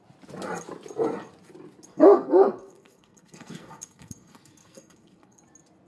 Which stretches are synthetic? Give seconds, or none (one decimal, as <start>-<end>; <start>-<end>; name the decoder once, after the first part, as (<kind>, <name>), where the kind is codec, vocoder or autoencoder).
1.9-5.4 (codec, SNAC)